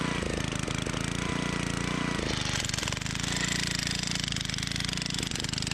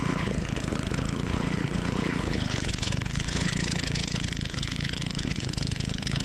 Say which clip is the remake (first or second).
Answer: second